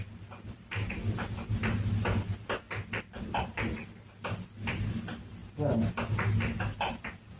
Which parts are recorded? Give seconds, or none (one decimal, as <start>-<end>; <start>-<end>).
0.0-7.4